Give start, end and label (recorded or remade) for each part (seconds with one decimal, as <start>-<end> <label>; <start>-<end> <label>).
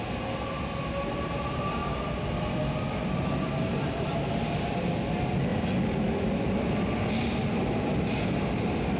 0.0-9.0 recorded